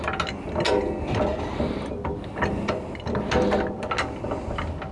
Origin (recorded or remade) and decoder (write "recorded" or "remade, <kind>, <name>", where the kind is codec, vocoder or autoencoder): recorded